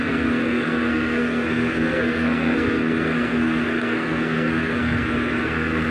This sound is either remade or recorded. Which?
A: remade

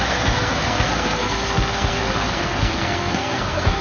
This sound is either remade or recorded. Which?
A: remade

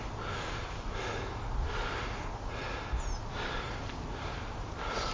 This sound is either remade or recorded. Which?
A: recorded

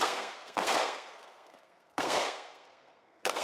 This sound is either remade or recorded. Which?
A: remade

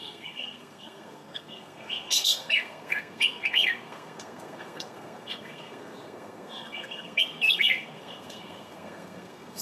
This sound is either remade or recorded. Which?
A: remade